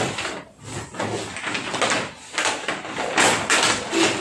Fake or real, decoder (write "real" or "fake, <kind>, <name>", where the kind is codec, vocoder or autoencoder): real